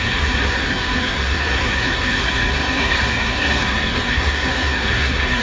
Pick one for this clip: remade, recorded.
remade